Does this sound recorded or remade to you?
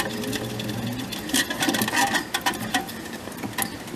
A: recorded